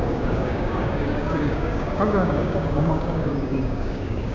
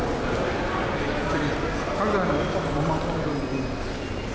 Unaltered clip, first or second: second